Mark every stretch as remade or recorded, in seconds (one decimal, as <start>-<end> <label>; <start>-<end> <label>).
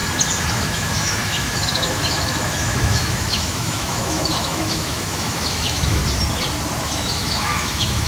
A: 0.0-0.5 recorded; 0.5-6.0 remade; 6.0-6.8 recorded; 6.8-8.1 remade